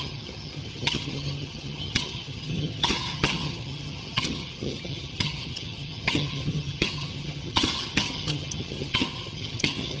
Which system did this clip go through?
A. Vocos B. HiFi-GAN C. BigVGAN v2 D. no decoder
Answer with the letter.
B